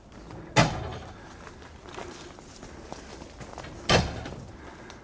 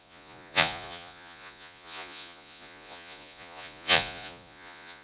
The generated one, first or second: second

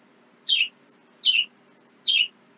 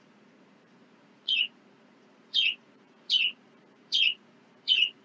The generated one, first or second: second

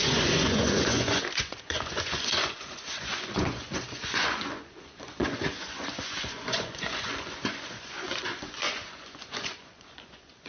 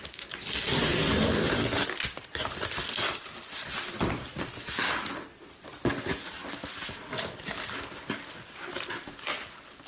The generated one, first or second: first